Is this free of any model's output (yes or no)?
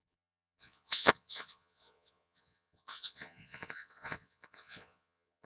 no